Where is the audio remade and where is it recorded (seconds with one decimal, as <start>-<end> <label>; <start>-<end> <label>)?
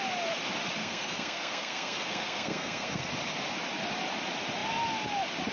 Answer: 0.0-0.8 recorded; 0.8-3.1 remade; 3.1-5.5 recorded